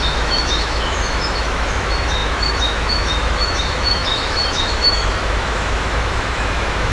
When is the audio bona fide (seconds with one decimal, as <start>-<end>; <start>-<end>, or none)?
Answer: none